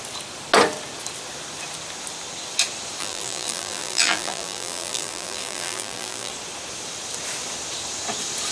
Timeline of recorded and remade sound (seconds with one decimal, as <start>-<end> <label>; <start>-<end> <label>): 0.0-3.0 recorded; 3.0-6.3 remade; 6.3-8.5 recorded